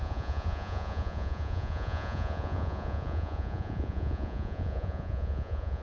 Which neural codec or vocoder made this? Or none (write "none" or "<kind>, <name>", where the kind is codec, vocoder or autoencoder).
vocoder, Vocos